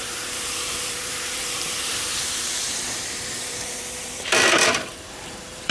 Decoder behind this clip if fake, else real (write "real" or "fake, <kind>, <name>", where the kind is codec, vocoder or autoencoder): fake, vocoder, BigVGAN v2